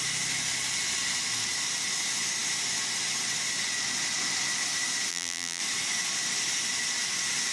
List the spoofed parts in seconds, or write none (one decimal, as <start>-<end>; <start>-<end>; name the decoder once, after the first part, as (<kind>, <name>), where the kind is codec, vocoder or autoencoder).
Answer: 5.1-5.6 (vocoder, BigVGAN v2)